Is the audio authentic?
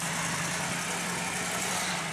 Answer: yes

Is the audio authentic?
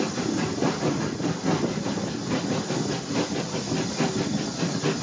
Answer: yes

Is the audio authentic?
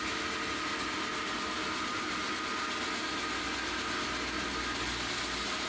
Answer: yes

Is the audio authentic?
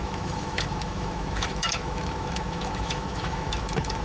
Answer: no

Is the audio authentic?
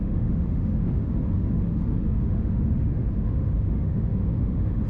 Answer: no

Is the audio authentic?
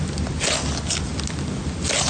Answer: yes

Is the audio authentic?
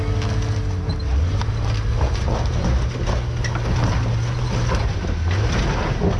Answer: yes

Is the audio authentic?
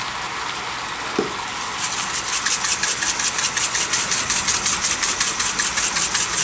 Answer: yes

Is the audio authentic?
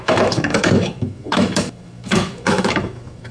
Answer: no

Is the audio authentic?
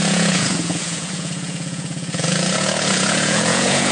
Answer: no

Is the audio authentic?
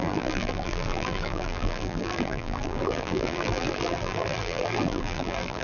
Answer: no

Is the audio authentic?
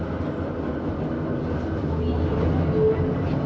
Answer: yes